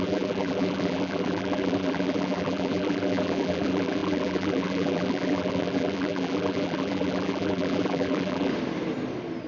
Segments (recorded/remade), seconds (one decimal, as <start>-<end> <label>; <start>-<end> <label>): 0.0-8.5 remade; 8.5-9.5 recorded